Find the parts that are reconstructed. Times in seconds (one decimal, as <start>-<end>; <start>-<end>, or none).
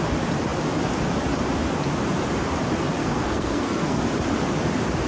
3.0-4.0